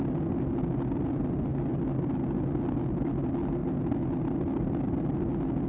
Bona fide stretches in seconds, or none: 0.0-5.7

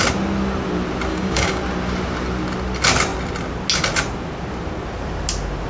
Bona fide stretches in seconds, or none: 0.0-1.1; 1.6-5.7